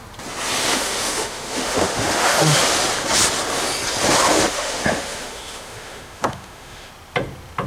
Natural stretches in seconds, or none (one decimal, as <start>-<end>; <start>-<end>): 0.0-0.7; 2.6-4.3; 6.9-7.7